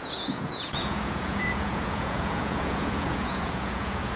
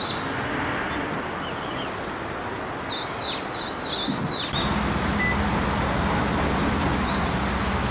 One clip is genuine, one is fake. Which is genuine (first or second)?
second